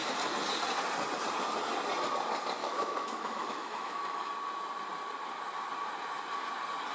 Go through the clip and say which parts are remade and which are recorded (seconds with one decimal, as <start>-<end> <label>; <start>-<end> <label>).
0.0-2.6 recorded; 2.6-4.3 remade; 4.3-6.9 recorded